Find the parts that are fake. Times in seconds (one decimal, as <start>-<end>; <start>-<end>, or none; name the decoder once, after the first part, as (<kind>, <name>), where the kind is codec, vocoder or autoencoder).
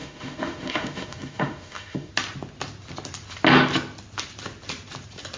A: 0.0-2.1 (autoencoder, DAC-VAE)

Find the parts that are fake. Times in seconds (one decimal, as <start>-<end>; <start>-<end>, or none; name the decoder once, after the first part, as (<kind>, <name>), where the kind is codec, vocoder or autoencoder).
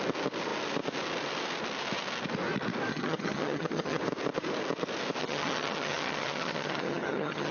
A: 2.9-4.0 (vocoder, HiFi-GAN); 5.2-7.5